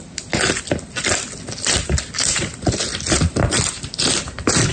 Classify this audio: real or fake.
real